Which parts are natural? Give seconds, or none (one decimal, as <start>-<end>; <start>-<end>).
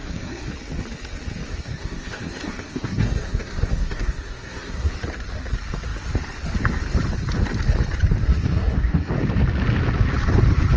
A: 0.5-1.5; 4.9-8.2; 9.1-10.8